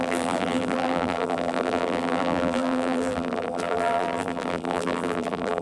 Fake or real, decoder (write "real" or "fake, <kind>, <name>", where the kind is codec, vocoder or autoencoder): fake, vocoder, BigVGAN v2